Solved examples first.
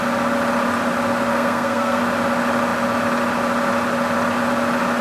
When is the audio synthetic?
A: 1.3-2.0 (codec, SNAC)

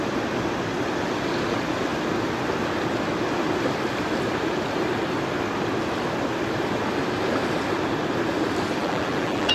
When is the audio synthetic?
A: 8.8-9.5 (vocoder, BigVGAN v2)

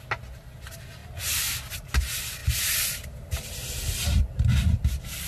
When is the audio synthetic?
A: 1.0-2.0 (vocoder, BigVGAN v2)

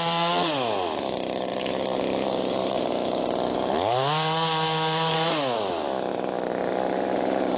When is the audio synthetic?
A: 1.5-3.2 (vocoder, BigVGAN v2); 6.6-7.6

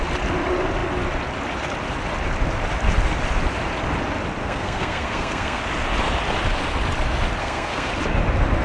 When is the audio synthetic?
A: 4.4-5.6 (codec, SNAC); 7.4-7.9

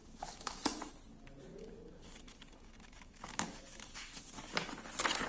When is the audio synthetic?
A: 0.0-0.9 (codec, DAC); 1.5-4.7

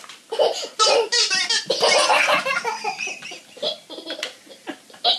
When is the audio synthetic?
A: none